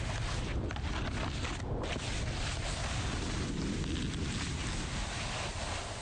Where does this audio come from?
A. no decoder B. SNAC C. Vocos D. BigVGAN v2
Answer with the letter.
A